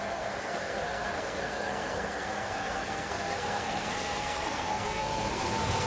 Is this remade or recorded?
remade